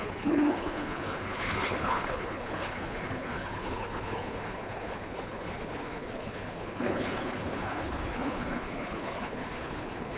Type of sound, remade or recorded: remade